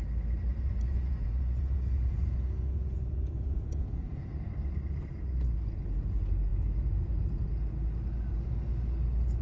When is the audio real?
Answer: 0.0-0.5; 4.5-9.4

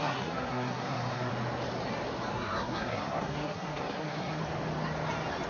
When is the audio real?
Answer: 1.3-2.3; 4.4-5.5